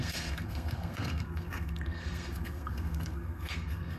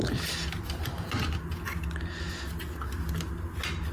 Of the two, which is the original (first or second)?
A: second